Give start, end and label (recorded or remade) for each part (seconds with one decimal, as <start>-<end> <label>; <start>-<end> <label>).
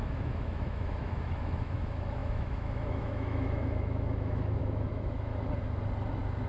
0.0-5.3 remade; 5.3-6.5 recorded